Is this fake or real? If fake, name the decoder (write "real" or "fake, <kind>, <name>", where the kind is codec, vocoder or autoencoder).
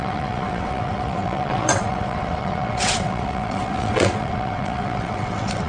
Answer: fake, vocoder, WaveNeXt